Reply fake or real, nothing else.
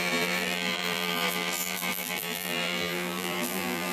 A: fake